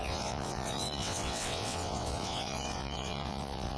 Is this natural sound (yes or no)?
no